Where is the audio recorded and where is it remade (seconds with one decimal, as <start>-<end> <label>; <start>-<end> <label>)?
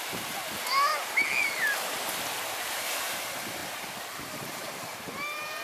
0.0-0.9 remade; 0.9-2.6 recorded; 2.6-3.6 remade; 3.6-4.2 recorded; 4.2-5.6 remade